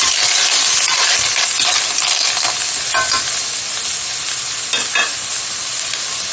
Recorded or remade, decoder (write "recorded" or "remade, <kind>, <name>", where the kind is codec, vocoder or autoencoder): recorded